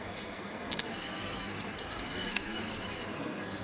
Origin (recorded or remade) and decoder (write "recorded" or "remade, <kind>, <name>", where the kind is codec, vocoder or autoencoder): remade, codec, SNAC